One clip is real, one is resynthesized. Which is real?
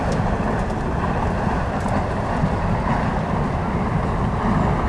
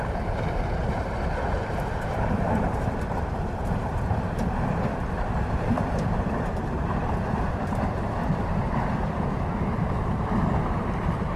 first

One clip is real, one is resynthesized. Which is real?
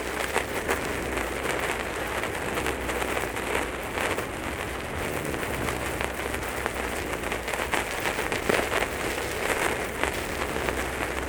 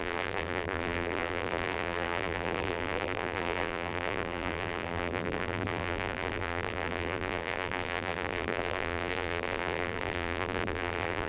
first